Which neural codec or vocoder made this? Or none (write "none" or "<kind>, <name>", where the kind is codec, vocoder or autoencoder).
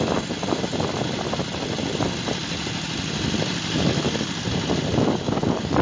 none